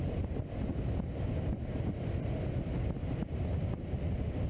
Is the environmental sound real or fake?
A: real